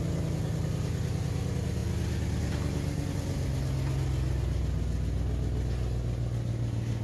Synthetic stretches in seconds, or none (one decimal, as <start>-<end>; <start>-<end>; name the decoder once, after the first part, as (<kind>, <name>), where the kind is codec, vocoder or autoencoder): none